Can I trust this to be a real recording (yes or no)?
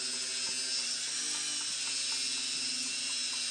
yes